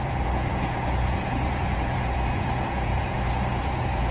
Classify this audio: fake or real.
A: fake